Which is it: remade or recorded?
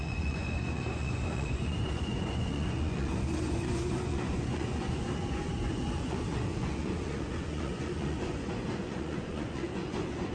remade